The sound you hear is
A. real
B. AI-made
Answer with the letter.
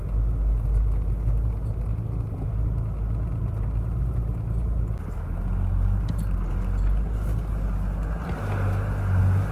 A